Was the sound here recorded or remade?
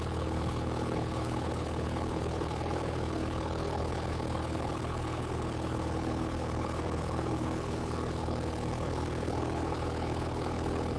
remade